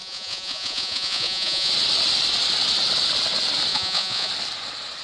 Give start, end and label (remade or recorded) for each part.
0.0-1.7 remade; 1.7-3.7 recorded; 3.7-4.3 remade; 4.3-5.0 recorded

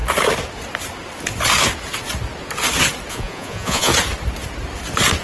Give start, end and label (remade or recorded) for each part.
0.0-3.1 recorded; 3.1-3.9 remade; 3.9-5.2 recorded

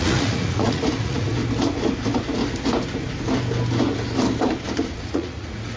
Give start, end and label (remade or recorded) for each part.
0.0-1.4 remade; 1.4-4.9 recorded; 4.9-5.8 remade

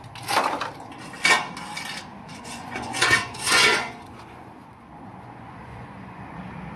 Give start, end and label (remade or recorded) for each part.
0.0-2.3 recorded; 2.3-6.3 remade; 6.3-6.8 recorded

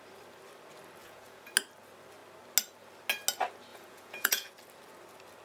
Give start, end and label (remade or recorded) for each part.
0.0-1.0 recorded; 1.0-1.5 remade; 1.5-3.7 recorded; 3.7-4.5 remade; 4.5-5.4 recorded

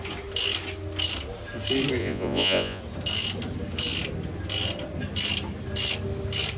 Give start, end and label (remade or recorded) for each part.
0.0-2.0 recorded; 2.0-2.8 remade; 2.8-6.6 recorded

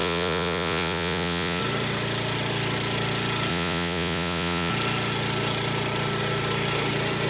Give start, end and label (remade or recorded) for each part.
0.0-1.6 remade; 1.6-3.5 recorded; 3.5-4.7 remade; 4.7-7.3 recorded

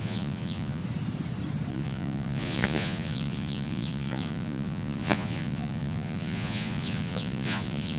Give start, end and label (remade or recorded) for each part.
0.0-0.8 remade; 0.8-1.7 recorded; 1.7-8.0 remade